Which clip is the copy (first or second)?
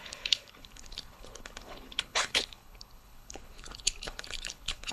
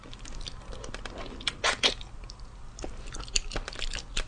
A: first